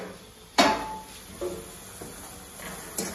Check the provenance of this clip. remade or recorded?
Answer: recorded